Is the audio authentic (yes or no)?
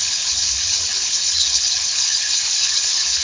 no